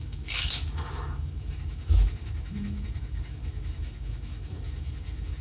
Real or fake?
fake